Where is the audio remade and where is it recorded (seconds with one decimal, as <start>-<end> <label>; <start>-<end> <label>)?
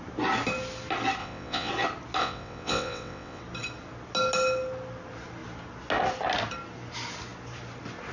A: 0.0-1.2 recorded; 1.2-1.7 remade; 1.7-2.2 recorded; 2.2-3.4 remade; 3.4-8.1 recorded